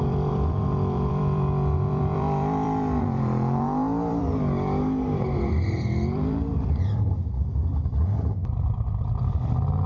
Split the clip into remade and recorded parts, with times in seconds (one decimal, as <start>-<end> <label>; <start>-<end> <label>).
0.0-9.9 remade